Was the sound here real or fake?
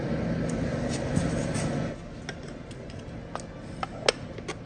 real